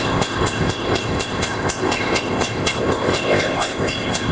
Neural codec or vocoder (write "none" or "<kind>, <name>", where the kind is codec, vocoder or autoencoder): codec, ZipCodec